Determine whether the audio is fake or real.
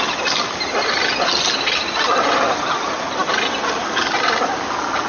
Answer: real